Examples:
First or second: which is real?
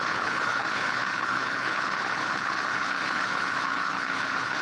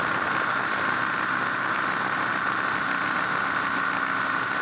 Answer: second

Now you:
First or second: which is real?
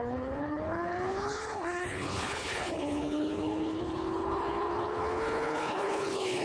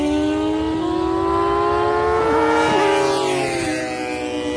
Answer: second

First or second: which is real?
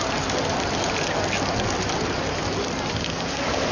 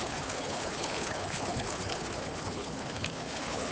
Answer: first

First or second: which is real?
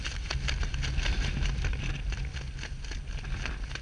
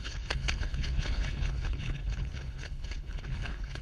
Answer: first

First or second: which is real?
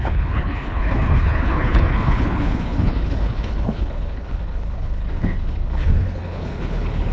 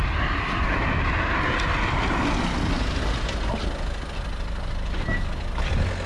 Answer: second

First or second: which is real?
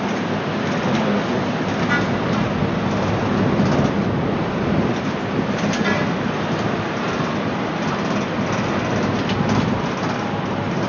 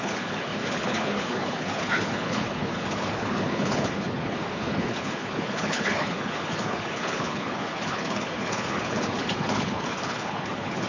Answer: first